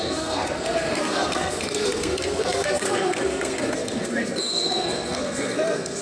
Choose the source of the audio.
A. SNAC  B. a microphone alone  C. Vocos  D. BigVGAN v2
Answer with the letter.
A